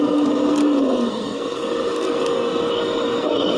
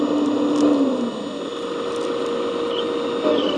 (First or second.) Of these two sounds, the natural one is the second